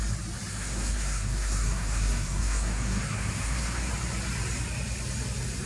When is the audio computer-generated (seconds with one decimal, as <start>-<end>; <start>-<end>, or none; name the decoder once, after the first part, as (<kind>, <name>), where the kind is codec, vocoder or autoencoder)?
0.5-3.9 (codec, SNAC)